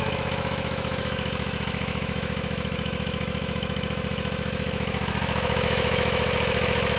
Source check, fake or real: fake